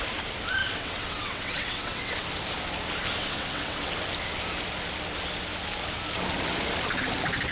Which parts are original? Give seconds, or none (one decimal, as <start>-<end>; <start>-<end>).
0.0-0.6; 2.1-3.2; 3.9-7.5